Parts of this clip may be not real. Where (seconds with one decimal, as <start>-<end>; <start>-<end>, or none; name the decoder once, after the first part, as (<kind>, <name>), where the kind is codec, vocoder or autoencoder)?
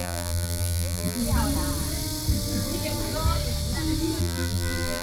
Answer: 0.0-1.2 (vocoder, BigVGAN v2); 4.2-5.0